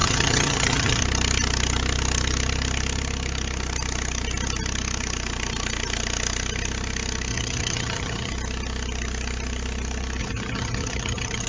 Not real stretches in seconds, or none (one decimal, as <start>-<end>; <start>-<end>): 0.0-1.0; 7.3-8.3; 10.2-11.5